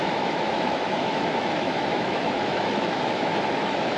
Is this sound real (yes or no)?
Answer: no